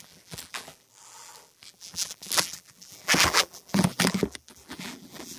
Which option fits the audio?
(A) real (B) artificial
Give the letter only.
B